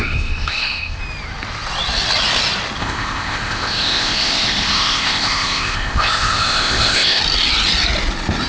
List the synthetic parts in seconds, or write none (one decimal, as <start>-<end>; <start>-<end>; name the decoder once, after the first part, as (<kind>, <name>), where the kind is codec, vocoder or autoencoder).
0.0-1.0 (codec, ZipCodec); 2.8-7.2